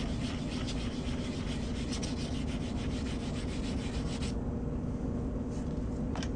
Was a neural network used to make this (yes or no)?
no